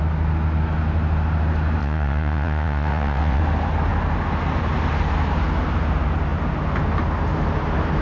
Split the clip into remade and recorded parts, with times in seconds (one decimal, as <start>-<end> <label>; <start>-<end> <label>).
0.0-1.8 recorded; 1.8-3.4 remade; 3.4-8.0 recorded